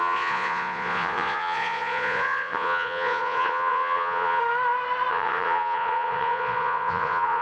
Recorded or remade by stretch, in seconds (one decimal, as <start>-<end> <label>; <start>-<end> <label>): 0.0-4.4 remade; 4.4-5.1 recorded; 5.1-7.4 remade